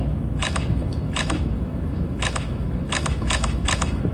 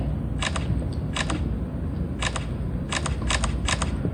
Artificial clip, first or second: first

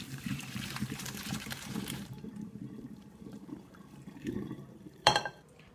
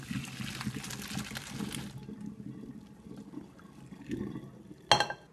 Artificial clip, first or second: first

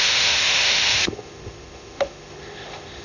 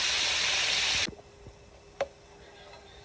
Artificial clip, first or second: first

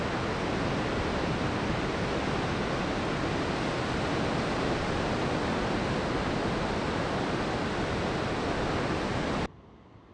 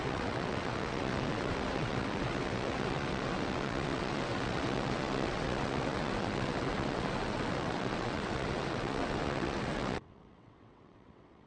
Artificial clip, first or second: second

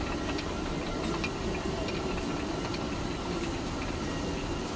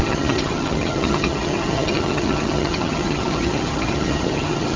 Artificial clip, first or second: second